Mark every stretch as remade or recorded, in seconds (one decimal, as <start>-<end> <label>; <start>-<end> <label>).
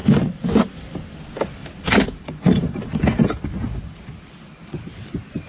0.0-1.6 recorded; 1.6-4.7 remade; 4.7-5.5 recorded